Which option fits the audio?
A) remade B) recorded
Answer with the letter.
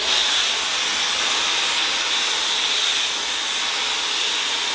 B